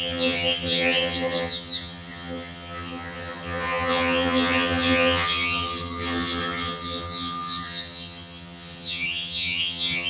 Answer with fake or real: fake